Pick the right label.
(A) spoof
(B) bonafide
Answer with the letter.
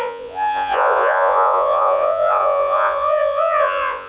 A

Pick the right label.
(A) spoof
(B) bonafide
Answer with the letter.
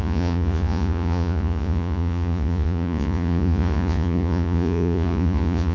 A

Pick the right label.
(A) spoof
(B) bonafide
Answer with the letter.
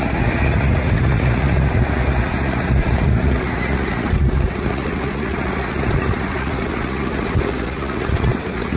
A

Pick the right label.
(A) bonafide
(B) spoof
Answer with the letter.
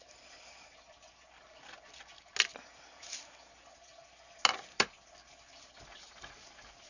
A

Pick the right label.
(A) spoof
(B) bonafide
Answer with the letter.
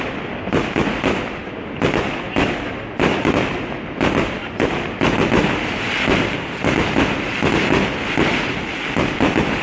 B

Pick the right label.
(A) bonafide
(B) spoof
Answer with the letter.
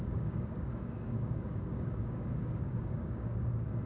B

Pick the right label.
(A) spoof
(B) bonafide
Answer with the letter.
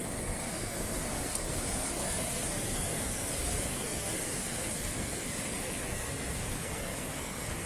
A